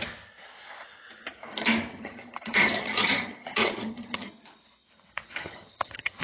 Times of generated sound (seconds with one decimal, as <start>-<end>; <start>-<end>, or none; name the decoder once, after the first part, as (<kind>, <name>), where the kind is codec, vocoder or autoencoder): 1.9-4.3 (vocoder, HiFi-GAN); 5.3-6.2